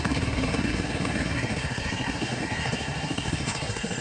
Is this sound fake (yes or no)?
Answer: yes